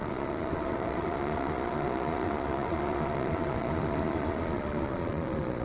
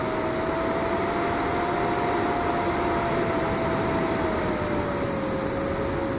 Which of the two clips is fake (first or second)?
first